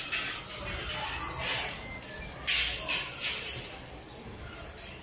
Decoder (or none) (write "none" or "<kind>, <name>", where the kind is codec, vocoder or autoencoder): none